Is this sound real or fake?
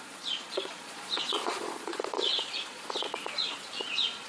fake